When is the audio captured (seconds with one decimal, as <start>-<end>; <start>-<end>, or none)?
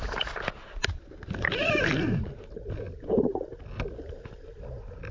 0.0-5.1